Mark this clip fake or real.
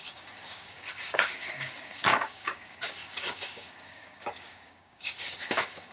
fake